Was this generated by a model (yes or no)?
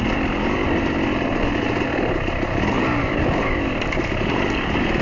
no